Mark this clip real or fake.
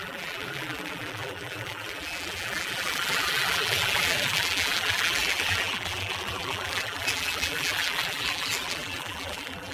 fake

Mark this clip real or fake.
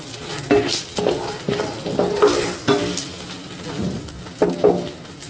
real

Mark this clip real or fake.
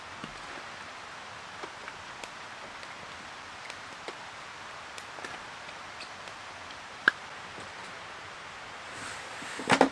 real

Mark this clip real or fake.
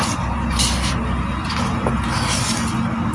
real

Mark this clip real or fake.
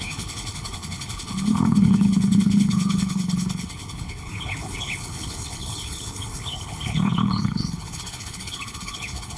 fake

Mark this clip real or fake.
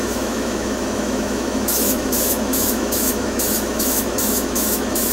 fake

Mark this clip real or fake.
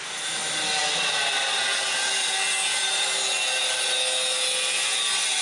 real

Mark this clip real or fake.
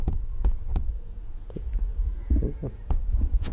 fake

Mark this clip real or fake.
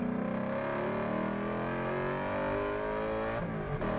real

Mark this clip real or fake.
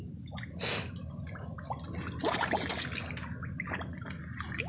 real